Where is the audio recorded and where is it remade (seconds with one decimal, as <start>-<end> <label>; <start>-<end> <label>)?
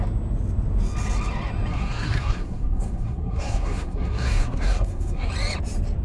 0.0-1.7 recorded; 1.7-5.3 remade; 5.3-6.0 recorded